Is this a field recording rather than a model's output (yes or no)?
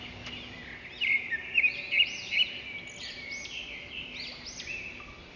yes